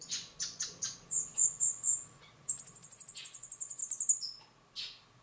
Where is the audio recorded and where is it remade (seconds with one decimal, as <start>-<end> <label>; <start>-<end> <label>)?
0.0-3.8 remade; 3.8-5.2 recorded